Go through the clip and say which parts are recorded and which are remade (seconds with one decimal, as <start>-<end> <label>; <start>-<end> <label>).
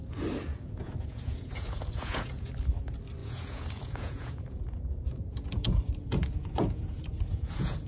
0.0-0.5 recorded; 0.5-2.5 remade; 2.5-3.2 recorded; 3.2-7.9 remade